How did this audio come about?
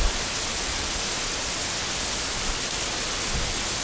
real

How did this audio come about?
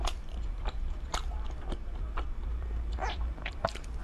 fake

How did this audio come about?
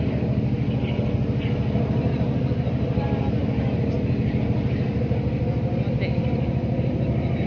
real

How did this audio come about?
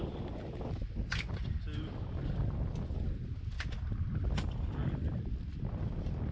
real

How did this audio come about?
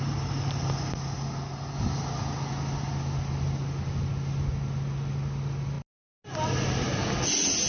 real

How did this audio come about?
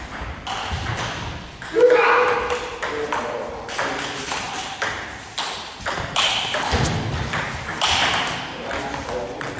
real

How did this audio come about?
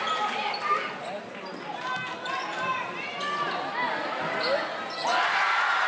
real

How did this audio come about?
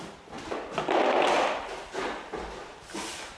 real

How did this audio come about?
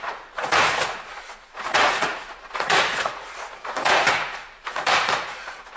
fake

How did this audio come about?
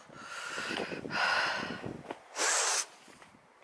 real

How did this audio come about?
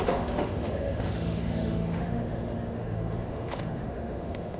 fake